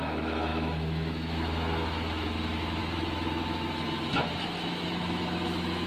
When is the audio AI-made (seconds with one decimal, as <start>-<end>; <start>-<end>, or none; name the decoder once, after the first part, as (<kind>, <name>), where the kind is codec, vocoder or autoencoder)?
0.0-5.9 (autoencoder, DAC-VAE)